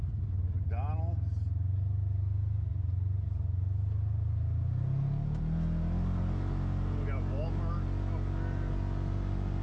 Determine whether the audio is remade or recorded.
recorded